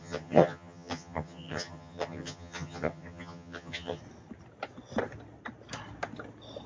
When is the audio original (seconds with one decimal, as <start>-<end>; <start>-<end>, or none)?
4.0-6.7